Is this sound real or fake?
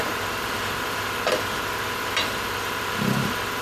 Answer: fake